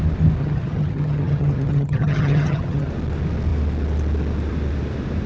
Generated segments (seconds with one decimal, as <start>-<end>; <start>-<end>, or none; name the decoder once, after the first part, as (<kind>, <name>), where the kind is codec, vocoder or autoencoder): 0.4-2.9 (vocoder, HiFi-GAN)